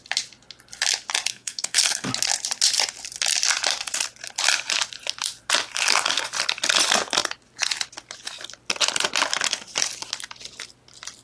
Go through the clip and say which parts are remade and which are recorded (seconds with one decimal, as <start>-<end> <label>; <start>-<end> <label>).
0.0-1.3 recorded; 1.3-2.1 remade; 2.1-11.2 recorded